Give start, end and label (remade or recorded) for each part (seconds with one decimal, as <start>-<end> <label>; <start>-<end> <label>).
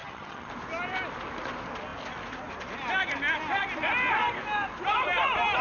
0.0-0.5 remade; 0.5-5.6 recorded